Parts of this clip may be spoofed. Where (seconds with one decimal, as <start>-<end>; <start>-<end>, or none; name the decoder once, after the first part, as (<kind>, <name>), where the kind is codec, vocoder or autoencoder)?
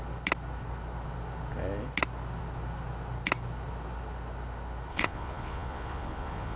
4.9-6.6 (vocoder, Vocos)